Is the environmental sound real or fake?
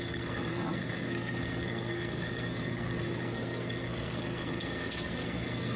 fake